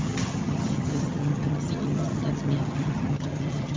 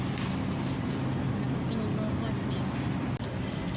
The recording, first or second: second